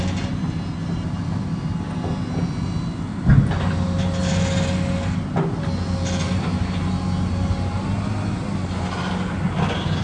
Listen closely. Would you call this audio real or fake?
real